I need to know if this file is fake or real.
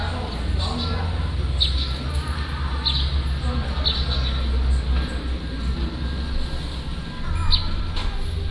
real